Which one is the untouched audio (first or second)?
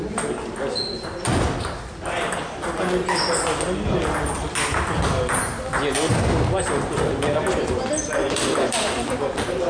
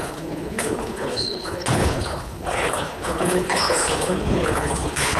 first